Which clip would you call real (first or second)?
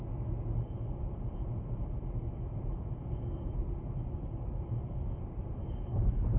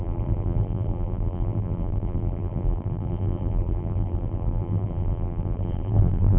first